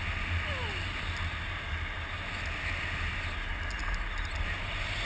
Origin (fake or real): real